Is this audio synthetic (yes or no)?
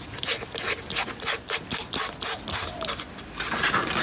no